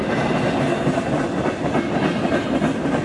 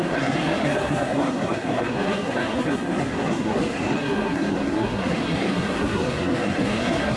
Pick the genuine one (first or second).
first